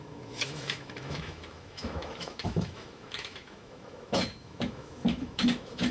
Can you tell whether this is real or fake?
fake